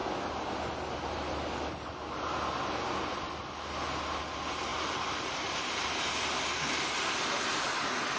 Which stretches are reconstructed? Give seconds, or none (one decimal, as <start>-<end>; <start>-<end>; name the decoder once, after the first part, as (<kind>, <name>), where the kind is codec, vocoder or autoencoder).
none